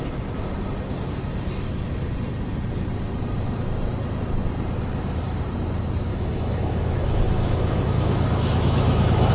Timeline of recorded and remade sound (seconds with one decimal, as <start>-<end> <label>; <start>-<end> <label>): 0.0-6.1 recorded; 6.1-9.3 remade

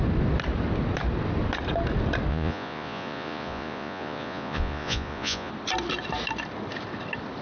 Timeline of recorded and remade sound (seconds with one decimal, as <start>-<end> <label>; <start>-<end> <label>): 0.0-2.3 recorded; 2.3-5.5 remade; 5.5-7.4 recorded

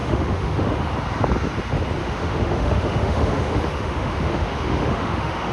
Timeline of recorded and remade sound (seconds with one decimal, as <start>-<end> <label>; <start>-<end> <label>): 0.0-0.9 remade; 0.9-2.0 recorded; 2.0-5.5 remade

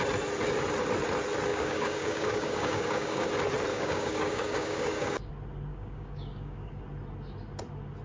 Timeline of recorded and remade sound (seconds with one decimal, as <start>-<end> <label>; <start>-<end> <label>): 0.0-1.5 recorded; 1.5-3.3 remade; 3.3-3.7 recorded; 3.7-5.3 remade; 5.3-5.7 recorded; 5.7-6.8 remade; 6.8-8.0 recorded

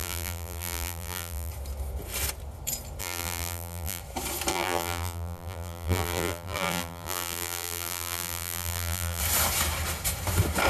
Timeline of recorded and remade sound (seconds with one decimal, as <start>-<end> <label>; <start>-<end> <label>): 0.0-1.5 remade; 1.5-3.0 recorded; 3.0-4.0 remade; 4.0-4.5 recorded; 4.5-9.2 remade; 9.2-10.7 recorded

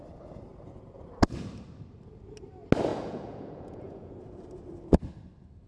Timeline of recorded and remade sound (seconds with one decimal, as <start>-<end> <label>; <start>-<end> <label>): 0.0-2.9 recorded; 2.9-4.1 remade; 4.1-5.7 recorded